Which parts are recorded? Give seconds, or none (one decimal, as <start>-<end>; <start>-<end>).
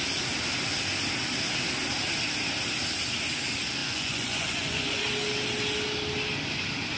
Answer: 0.0-3.8; 5.0-7.0